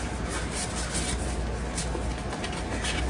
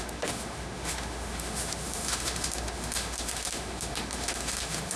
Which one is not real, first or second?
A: second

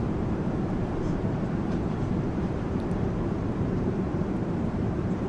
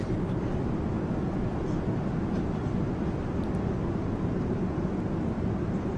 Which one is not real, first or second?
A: first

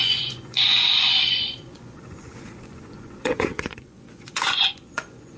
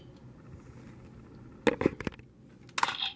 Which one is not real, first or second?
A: first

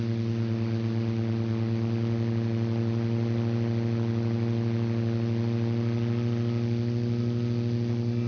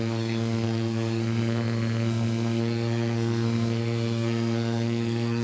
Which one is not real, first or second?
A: second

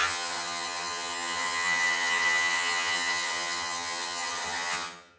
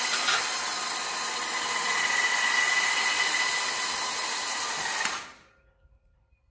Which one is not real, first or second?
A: first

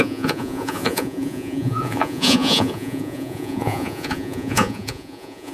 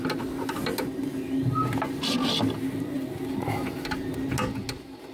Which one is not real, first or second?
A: first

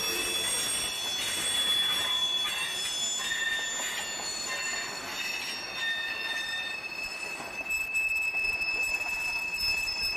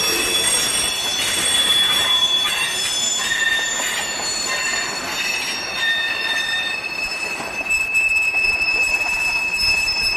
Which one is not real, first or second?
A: second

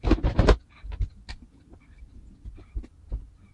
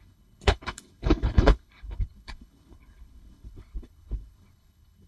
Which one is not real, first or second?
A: second